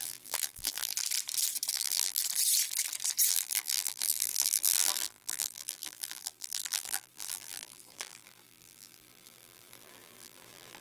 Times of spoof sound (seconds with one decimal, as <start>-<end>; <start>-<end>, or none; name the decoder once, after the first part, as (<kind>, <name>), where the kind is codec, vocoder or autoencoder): 0.0-0.9 (vocoder, BigVGAN v2); 1.7-2.2; 3.3-10.8